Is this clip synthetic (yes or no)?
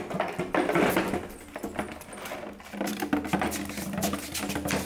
no